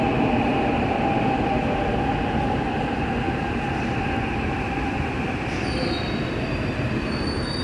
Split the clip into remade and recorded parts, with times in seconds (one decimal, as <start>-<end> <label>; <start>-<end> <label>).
0.0-7.6 recorded